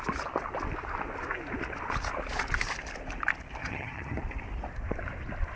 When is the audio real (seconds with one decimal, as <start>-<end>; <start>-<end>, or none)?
0.0-3.6; 4.2-5.6